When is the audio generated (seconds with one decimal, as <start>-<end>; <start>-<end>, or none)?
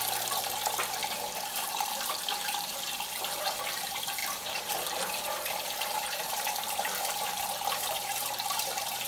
0.0-9.1